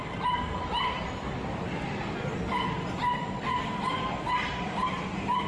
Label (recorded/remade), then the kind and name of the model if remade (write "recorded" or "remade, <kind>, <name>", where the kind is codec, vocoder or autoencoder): remade, vocoder, BigVGAN v2